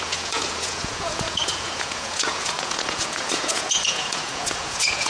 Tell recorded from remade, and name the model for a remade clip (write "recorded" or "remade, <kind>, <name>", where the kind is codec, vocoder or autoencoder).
remade, vocoder, Vocos